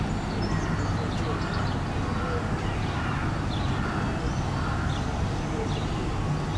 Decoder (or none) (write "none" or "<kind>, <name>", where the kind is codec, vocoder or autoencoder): none